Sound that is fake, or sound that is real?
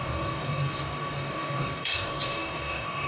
fake